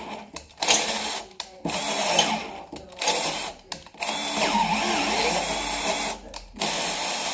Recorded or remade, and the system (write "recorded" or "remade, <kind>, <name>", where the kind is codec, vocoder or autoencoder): recorded